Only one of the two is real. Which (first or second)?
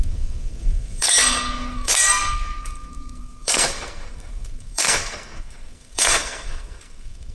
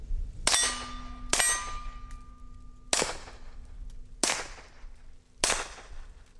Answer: second